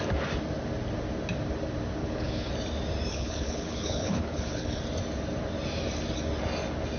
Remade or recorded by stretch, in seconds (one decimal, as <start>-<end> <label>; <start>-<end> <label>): 0.0-2.0 recorded; 2.0-2.5 remade; 2.5-3.1 recorded; 3.1-4.8 remade; 4.8-7.0 recorded